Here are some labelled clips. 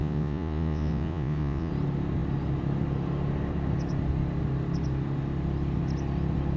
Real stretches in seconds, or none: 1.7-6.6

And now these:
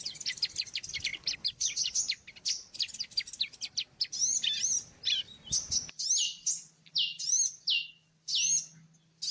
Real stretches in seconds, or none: 0.0-9.3